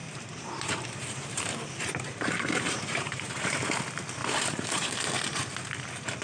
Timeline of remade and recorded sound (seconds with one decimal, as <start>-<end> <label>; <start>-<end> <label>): 0.0-3.7 remade; 3.7-4.2 recorded; 4.2-5.0 remade; 5.0-6.2 recorded

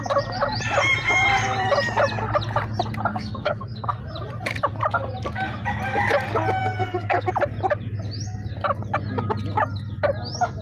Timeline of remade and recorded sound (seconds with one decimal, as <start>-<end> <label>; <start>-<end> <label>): 0.0-3.1 recorded; 3.1-4.0 remade; 4.0-6.6 recorded; 6.6-7.3 remade; 7.3-10.6 recorded

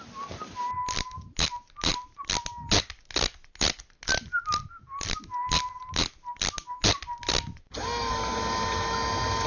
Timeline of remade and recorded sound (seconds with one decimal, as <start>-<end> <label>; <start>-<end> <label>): 0.0-9.5 recorded

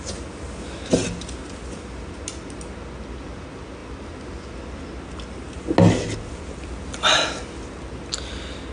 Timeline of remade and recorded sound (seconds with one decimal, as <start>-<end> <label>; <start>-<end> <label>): 0.0-8.7 recorded

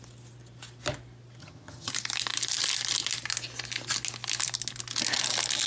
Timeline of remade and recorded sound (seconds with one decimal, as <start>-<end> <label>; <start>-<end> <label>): 0.0-1.4 recorded; 1.4-1.9 remade; 1.9-5.7 recorded

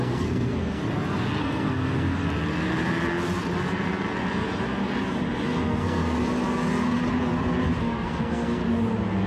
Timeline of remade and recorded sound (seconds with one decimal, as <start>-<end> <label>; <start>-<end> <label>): 0.0-0.8 remade; 0.8-1.4 recorded; 1.4-2.2 remade; 2.2-5.6 recorded; 5.6-6.0 remade; 6.0-7.8 recorded; 7.8-8.6 remade; 8.6-9.3 recorded